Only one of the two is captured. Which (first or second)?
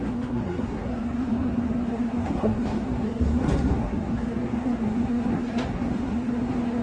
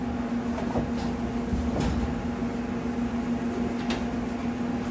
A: second